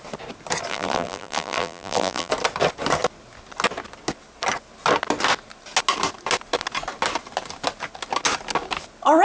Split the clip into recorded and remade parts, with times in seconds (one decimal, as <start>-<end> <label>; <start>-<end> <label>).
0.0-0.7 recorded; 0.7-2.3 remade; 2.3-9.2 recorded